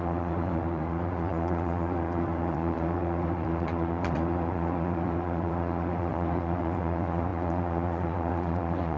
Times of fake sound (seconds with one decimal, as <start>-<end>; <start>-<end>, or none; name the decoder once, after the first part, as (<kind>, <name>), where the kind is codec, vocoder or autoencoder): 0.0-9.0 (vocoder, Vocos)